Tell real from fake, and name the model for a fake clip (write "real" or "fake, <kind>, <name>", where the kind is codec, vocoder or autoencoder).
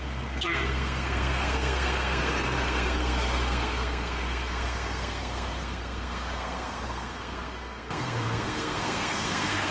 fake, codec, SNAC